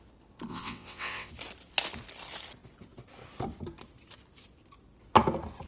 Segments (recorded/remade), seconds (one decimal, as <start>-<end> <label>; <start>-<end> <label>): 0.0-0.5 recorded; 0.5-1.3 remade; 1.3-5.7 recorded